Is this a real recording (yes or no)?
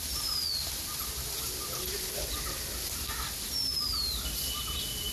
yes